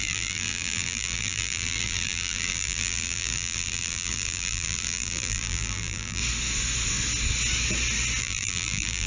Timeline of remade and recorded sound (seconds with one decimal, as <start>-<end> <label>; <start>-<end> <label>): 0.0-6.2 remade; 6.2-8.2 recorded; 8.2-9.1 remade